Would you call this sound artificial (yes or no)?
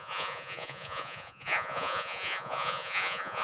yes